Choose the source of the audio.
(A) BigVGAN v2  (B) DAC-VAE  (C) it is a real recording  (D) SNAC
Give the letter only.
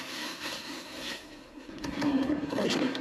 D